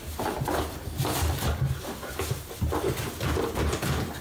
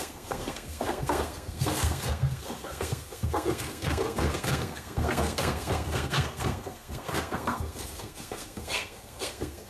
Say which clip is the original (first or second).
first